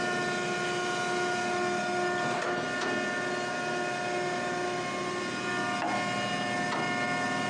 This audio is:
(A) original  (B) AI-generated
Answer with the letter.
A